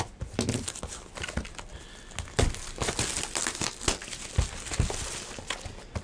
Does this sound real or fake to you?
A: real